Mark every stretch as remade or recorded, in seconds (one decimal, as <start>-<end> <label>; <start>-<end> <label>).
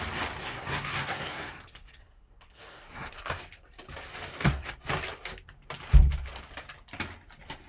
0.0-0.4 recorded; 0.4-3.4 remade; 3.4-4.3 recorded; 4.3-4.8 remade; 4.8-7.7 recorded